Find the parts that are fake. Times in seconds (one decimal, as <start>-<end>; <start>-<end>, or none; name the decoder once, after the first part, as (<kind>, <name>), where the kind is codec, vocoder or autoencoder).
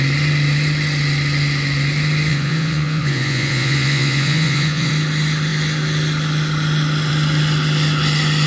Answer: 2.3-4.9 (vocoder, Vocos)